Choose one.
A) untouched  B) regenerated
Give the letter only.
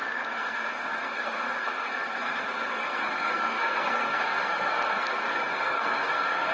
B